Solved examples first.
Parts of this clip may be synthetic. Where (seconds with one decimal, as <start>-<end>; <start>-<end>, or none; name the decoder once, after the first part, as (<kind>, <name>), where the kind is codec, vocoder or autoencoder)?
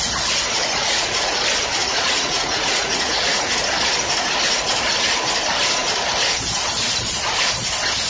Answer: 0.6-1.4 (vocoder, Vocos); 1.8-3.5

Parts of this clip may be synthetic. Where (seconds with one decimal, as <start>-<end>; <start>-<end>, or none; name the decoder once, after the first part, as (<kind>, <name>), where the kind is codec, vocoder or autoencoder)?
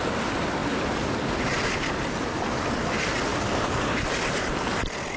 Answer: none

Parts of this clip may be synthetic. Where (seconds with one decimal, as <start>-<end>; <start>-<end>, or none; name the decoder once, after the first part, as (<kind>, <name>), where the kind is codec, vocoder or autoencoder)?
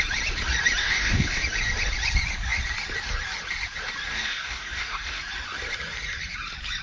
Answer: 0.8-1.4 (codec, DAC); 4.1-5.2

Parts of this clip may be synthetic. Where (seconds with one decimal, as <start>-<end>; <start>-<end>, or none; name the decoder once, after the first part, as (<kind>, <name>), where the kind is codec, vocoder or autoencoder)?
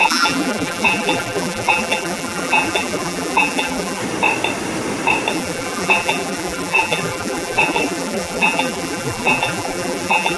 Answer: 0.0-4.0 (vocoder, BigVGAN v2); 5.3-10.4